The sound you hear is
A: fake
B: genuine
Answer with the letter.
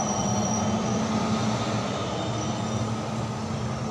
B